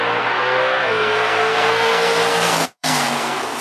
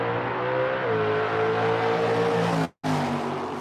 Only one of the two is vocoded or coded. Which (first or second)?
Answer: first